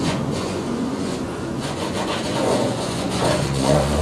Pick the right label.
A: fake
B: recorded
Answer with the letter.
A